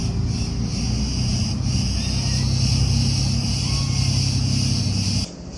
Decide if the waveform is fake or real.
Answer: real